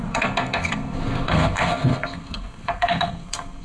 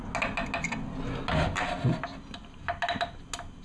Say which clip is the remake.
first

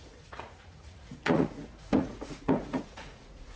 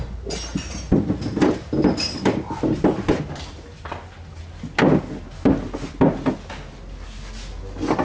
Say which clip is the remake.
first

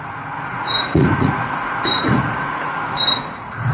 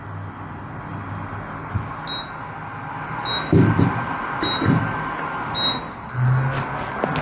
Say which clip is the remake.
first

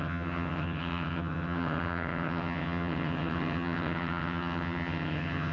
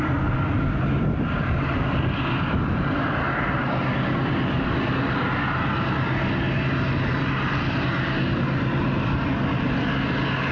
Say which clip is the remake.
first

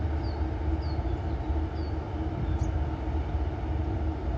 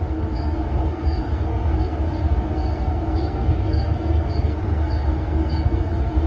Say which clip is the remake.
second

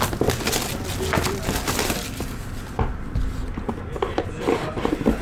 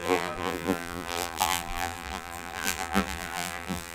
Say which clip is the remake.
second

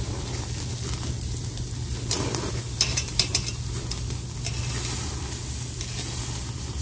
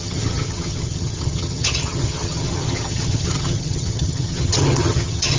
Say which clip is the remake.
second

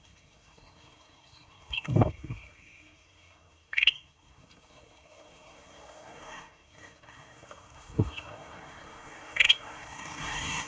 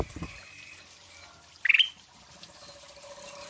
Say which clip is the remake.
first